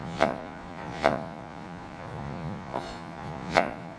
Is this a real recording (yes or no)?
no